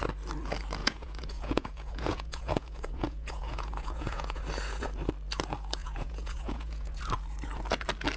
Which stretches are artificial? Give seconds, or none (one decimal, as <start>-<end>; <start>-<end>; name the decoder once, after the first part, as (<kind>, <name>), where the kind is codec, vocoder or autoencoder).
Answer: 0.8-4.4 (vocoder, Vocos); 5.8-7.0